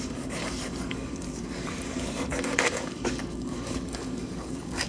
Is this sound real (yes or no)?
no